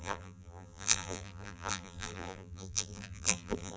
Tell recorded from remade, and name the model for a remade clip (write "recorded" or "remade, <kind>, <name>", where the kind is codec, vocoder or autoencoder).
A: remade, vocoder, BigVGAN v2